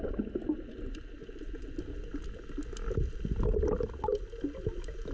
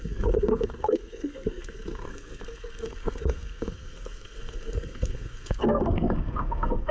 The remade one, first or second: second